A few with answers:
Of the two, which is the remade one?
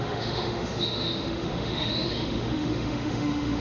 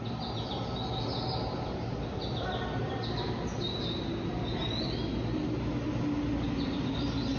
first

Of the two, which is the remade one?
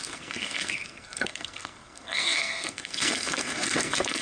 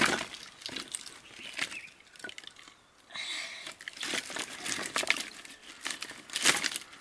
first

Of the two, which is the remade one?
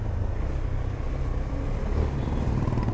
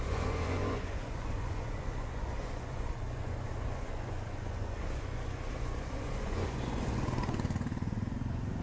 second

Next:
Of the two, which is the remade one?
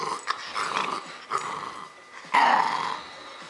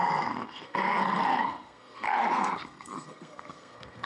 second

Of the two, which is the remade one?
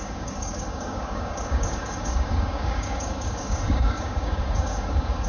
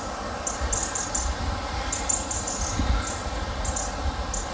first